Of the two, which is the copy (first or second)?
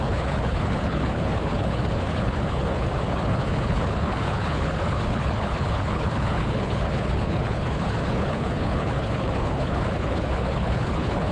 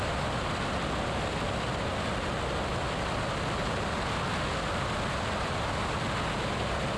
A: first